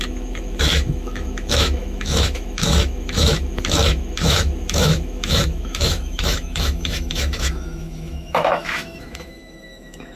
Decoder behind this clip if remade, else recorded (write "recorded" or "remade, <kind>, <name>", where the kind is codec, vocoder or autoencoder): remade, autoencoder, DAC-VAE